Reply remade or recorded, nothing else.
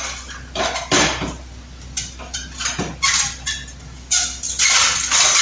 recorded